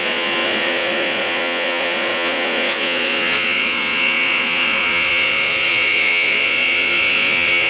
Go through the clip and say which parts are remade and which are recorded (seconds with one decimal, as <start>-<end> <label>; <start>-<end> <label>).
0.0-7.7 remade

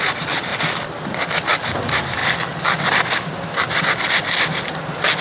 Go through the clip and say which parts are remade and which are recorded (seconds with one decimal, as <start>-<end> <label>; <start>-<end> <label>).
0.0-5.2 recorded

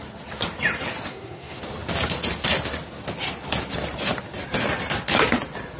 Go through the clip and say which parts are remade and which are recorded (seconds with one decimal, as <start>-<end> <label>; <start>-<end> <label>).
0.0-1.1 recorded; 1.1-1.6 remade; 1.6-5.8 recorded

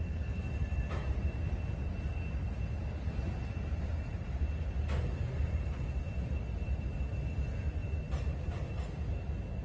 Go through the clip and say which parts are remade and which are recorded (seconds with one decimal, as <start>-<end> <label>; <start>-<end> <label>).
0.0-9.6 recorded

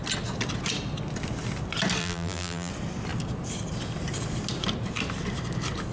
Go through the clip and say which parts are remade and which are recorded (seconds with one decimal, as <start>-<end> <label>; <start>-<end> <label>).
0.0-2.0 recorded; 2.0-2.7 remade; 2.7-5.9 recorded

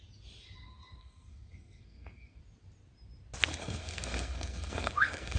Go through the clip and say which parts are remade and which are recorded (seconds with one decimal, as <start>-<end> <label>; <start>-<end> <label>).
0.0-1.0 recorded; 1.0-2.4 remade; 2.4-3.5 recorded; 3.5-5.4 remade

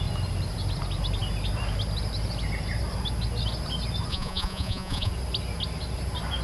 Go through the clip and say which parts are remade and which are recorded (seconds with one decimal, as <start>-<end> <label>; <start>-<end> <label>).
0.0-4.1 recorded; 4.1-5.1 remade; 5.1-6.4 recorded